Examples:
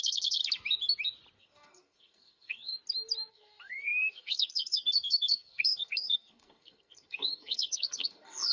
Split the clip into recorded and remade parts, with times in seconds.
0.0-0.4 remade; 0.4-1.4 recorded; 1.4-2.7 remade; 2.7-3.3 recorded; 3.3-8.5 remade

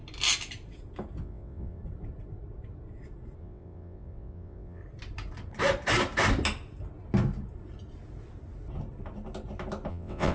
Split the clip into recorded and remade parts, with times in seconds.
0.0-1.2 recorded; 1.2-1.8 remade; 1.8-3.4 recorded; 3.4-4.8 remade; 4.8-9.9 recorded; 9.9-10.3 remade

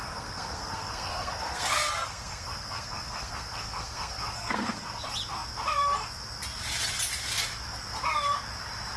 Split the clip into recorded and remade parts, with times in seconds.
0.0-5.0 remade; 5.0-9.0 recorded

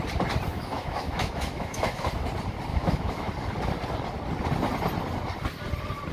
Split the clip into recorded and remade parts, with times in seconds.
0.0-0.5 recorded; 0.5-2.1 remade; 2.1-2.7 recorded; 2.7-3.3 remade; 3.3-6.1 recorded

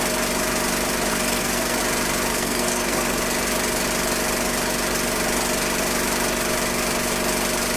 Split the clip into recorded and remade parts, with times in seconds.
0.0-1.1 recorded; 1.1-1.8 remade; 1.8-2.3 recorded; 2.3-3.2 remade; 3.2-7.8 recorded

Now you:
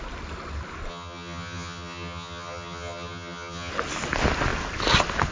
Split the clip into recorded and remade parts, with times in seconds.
0.0-0.9 recorded; 0.9-3.7 remade; 3.7-5.3 recorded

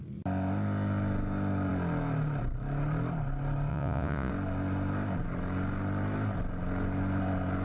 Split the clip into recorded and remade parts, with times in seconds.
0.0-3.7 recorded; 3.7-4.3 remade; 4.3-7.6 recorded

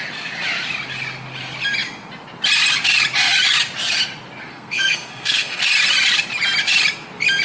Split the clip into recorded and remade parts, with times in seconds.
0.0-4.5 recorded; 4.5-5.6 remade; 5.6-7.4 recorded